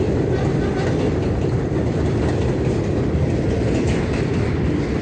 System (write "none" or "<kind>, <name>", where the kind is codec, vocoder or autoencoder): vocoder, BigVGAN v2